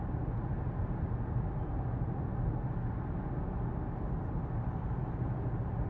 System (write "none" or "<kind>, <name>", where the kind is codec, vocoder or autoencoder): none